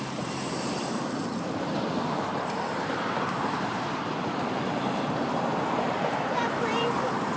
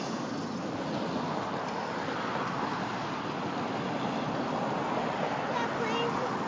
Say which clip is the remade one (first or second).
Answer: first